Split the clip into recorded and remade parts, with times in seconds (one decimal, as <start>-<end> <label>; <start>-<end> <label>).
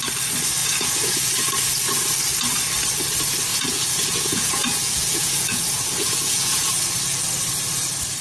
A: 0.0-0.6 recorded; 0.6-1.3 remade; 1.3-3.5 recorded; 3.5-6.7 remade; 6.7-8.2 recorded